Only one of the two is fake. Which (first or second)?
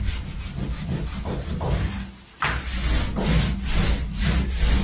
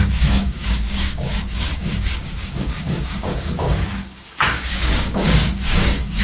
second